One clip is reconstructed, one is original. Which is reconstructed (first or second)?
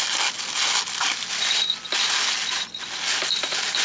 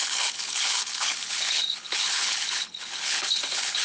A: second